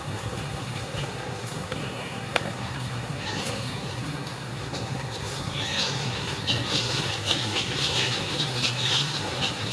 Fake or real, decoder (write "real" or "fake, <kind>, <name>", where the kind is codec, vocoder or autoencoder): fake, codec, SNAC